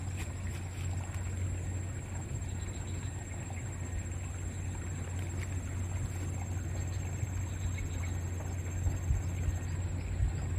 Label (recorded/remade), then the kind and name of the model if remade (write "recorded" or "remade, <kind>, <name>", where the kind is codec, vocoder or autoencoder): recorded